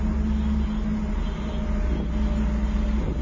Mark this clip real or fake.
real